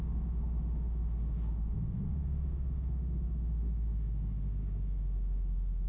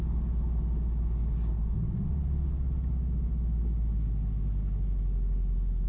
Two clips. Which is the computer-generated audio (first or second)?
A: first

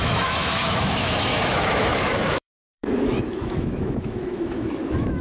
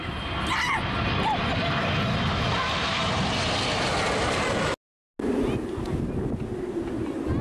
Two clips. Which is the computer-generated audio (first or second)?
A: first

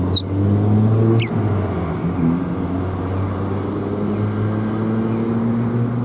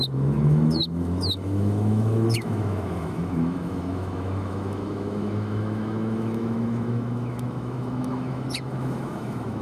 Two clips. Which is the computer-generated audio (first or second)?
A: second